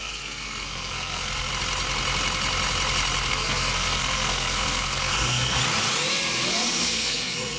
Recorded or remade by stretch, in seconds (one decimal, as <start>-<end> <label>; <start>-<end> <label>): 0.0-1.5 remade; 1.5-3.3 recorded; 3.3-5.6 remade; 5.6-6.5 recorded; 6.5-7.6 remade